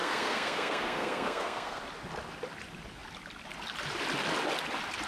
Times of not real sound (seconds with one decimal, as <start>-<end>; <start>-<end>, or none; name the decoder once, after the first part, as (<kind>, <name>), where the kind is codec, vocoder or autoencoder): 0.0-1.8 (codec, SNAC)